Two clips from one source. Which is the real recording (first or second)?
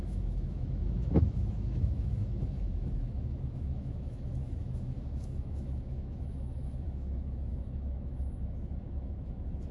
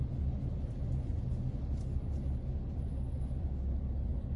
second